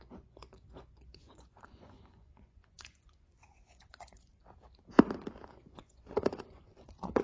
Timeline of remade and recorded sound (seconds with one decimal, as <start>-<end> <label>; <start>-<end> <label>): 0.0-4.4 remade; 4.4-5.5 recorded; 5.5-7.2 remade